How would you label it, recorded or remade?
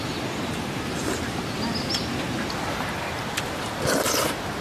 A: recorded